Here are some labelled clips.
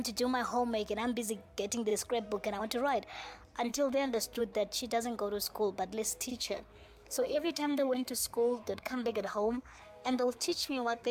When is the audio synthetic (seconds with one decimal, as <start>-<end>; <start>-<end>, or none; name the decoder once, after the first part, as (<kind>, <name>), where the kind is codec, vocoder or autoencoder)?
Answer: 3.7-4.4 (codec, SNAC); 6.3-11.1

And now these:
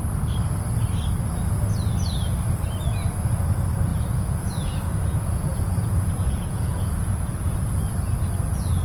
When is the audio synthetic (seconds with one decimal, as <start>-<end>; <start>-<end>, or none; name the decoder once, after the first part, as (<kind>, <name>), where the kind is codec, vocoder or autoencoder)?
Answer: 3.9-4.5 (vocoder, Vocos); 4.9-7.6

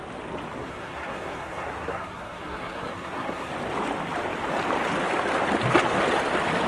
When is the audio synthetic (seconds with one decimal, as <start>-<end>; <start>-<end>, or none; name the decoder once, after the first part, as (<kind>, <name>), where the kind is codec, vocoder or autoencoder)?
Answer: 0.6-3.5 (codec, SNAC)

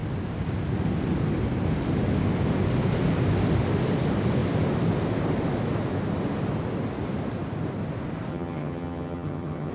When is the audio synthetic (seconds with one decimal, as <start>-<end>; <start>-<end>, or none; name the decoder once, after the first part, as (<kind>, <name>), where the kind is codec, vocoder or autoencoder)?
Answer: 8.3-9.7 (vocoder, HiFi-GAN)

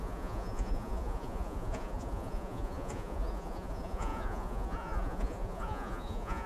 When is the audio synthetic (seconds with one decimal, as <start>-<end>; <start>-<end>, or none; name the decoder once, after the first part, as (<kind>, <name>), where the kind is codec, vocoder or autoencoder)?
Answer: 0.0-6.5 (vocoder, Vocos)